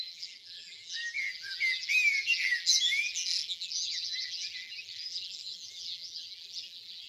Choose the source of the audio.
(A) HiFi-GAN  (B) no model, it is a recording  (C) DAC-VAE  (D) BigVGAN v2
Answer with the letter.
D